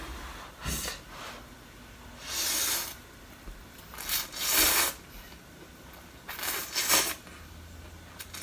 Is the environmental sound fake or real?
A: real